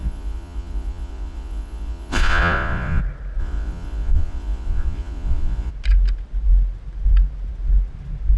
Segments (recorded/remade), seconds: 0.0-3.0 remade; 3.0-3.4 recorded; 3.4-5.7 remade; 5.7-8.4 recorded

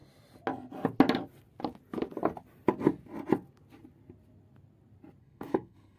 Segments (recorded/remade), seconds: 0.0-5.2 recorded; 5.2-6.0 remade